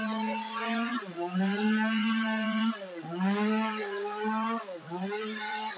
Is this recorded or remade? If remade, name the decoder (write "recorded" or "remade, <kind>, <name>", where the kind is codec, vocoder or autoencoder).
remade, vocoder, Vocos